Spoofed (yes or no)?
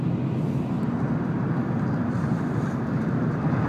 no